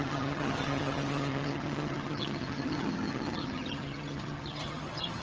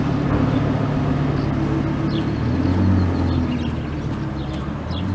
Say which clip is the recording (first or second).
second